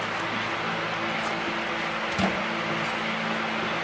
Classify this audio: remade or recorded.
recorded